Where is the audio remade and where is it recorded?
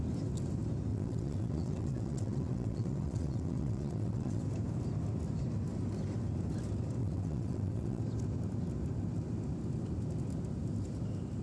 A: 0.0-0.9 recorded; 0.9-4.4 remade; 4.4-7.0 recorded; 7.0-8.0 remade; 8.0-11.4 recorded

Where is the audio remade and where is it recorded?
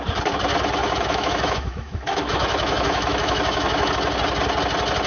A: 0.0-0.8 recorded; 0.8-3.9 remade; 3.9-5.1 recorded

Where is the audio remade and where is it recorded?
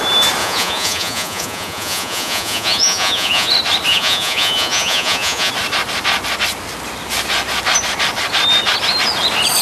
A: 0.0-0.4 recorded; 0.4-3.5 remade; 3.5-3.9 recorded; 3.9-5.5 remade; 5.5-9.6 recorded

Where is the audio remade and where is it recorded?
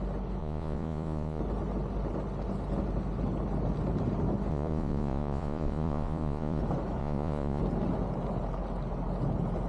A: 0.0-0.4 recorded; 0.4-1.4 remade; 1.4-4.5 recorded; 4.5-6.6 remade; 6.6-7.0 recorded; 7.0-7.6 remade; 7.6-9.7 recorded